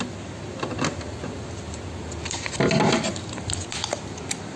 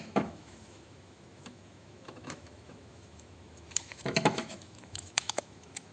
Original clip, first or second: first